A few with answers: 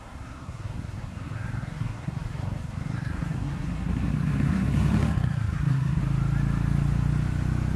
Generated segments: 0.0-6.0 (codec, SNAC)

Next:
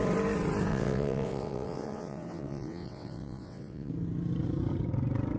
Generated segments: 0.7-3.9 (vocoder, WaveNeXt)

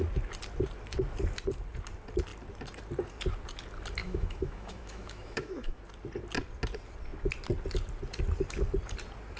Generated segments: 4.0-5.8 (autoencoder, DAC-VAE)

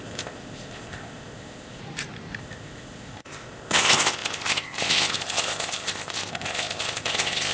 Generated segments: 0.0-1.8 (codec, ZipCodec); 2.4-7.5